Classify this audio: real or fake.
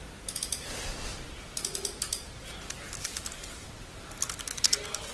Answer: real